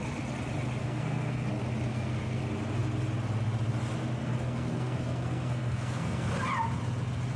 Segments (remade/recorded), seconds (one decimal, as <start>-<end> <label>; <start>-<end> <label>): 0.0-0.8 recorded; 0.8-1.5 remade; 1.5-1.9 recorded; 1.9-2.4 remade; 2.4-4.2 recorded; 4.2-6.3 remade; 6.3-7.4 recorded